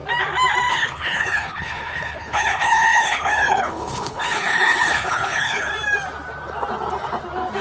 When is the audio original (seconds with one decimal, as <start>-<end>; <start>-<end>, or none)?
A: 0.0-0.7; 5.7-7.6